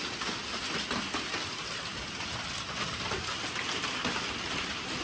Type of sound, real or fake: real